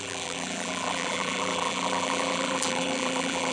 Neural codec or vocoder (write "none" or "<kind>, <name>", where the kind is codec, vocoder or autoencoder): vocoder, BigVGAN v2